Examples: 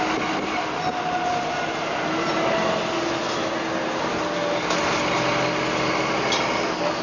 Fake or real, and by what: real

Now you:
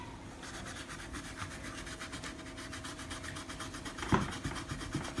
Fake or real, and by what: real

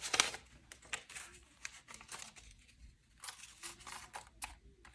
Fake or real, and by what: real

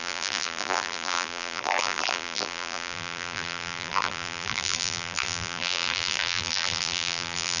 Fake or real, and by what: fake, vocoder, BigVGAN v2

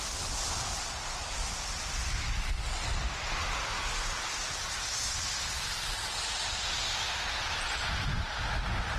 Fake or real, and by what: fake, vocoder, BigVGAN v2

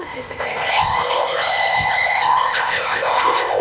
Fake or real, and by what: fake, codec, ZipCodec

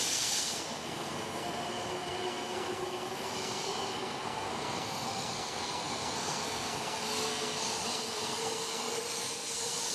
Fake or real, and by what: fake, codec, SNAC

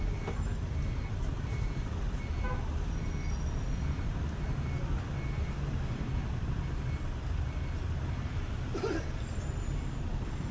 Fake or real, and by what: real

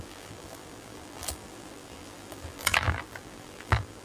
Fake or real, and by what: fake, vocoder, BigVGAN v2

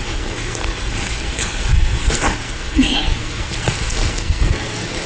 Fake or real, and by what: fake, codec, SNAC